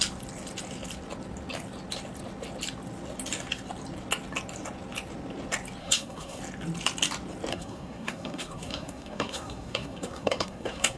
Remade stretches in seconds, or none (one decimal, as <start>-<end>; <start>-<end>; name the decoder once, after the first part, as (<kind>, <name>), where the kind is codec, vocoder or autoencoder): 5.8-6.4 (codec, SNAC); 7.5-11.0

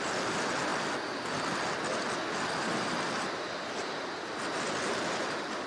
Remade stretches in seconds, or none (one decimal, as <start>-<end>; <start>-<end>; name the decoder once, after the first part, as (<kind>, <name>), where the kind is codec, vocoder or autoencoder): none

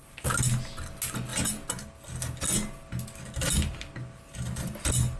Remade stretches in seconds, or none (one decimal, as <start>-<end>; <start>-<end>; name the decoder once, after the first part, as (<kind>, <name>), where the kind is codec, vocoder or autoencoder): none

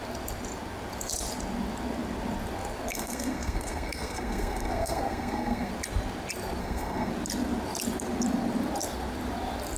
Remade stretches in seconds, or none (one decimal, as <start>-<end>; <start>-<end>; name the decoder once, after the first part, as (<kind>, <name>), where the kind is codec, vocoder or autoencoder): 2.9-5.7 (codec, SNAC); 6.6-7.1

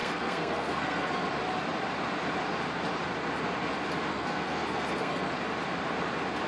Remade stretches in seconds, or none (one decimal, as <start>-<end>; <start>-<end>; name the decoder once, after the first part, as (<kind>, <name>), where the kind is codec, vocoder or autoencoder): 0.0-1.1 (codec, SNAC); 4.1-5.3